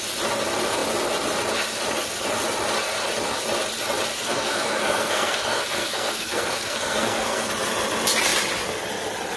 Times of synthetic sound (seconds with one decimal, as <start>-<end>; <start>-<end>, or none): 4.1-7.5